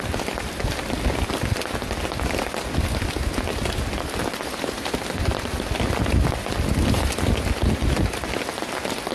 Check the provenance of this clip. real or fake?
real